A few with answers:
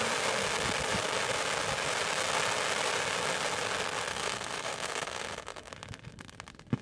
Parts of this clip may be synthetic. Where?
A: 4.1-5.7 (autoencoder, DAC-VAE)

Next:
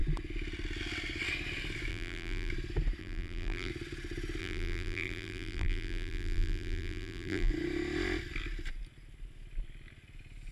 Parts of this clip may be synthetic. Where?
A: 1.9-2.5 (vocoder, BigVGAN v2); 3.0-3.7; 4.4-7.5